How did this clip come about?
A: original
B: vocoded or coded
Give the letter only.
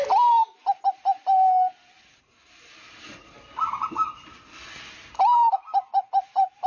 A